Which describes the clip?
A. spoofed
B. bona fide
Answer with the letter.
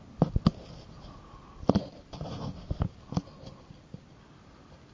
B